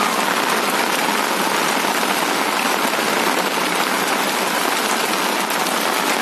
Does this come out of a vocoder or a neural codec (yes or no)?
no